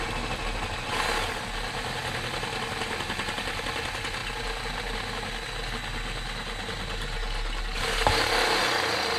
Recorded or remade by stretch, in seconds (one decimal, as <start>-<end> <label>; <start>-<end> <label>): 0.0-9.2 recorded